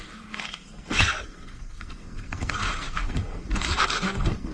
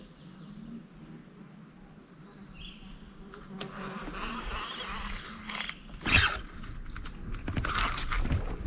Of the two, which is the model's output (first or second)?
first